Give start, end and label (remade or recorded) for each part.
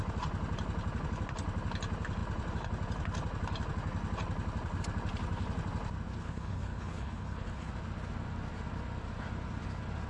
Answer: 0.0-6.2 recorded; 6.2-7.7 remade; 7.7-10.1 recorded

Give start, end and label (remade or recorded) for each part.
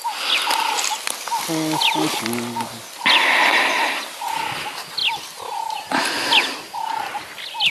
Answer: 0.0-7.7 recorded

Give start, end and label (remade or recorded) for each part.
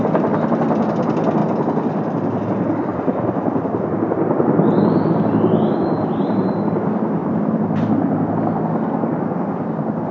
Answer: 0.0-1.4 recorded; 1.4-2.4 remade; 2.4-2.9 recorded; 2.9-3.9 remade; 3.9-7.2 recorded; 7.2-8.3 remade; 8.3-10.1 recorded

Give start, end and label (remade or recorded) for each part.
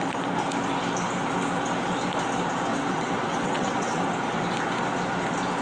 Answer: 0.0-2.7 recorded; 2.7-4.0 remade; 4.0-5.6 recorded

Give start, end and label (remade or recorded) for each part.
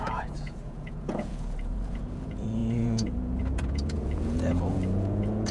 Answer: 0.0-5.5 remade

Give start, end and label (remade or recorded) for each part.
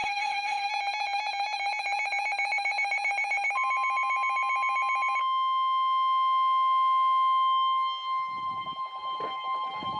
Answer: 0.0-0.7 remade; 0.7-10.0 recorded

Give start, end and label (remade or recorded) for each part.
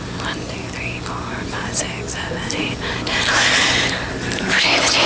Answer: 0.0-5.1 recorded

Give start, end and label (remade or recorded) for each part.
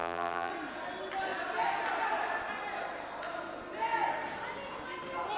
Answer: 0.0-0.5 remade; 0.5-5.4 recorded